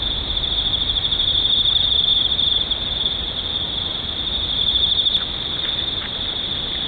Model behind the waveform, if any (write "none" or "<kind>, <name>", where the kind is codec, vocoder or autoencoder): none